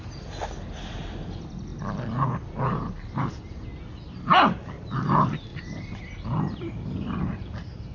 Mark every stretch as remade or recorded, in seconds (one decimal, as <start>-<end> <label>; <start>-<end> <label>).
0.0-5.5 recorded; 5.5-7.2 remade; 7.2-7.9 recorded